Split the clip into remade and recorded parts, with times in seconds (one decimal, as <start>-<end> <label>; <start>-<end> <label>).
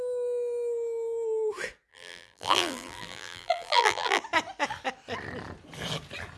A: 0.0-1.9 recorded; 1.9-4.2 remade; 4.2-6.4 recorded